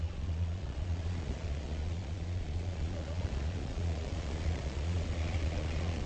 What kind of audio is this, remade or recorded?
remade